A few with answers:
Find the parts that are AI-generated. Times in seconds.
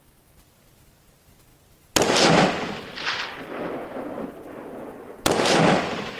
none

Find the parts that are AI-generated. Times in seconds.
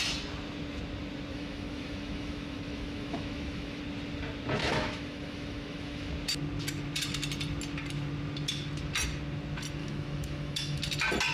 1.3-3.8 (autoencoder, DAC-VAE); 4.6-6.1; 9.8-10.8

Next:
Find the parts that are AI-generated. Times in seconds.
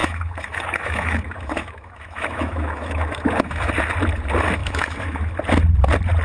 0.0-3.7 (autoencoder, DAC-VAE); 4.6-5.3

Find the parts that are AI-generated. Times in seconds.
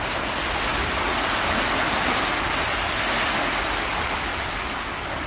none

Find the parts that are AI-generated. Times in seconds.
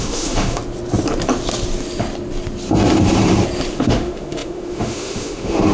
0.0-0.6 (autoencoder, DAC-VAE); 3.7-5.7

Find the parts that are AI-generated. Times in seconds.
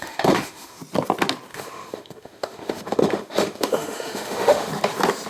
0.0-0.8 (autoencoder, DAC-VAE); 1.5-4.7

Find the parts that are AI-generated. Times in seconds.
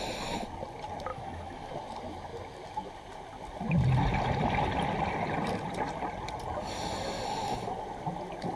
1.1-1.7 (autoencoder, DAC-VAE)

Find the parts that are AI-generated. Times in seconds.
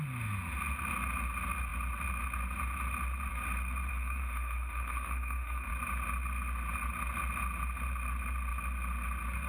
3.9-5.7 (autoencoder, DAC-VAE)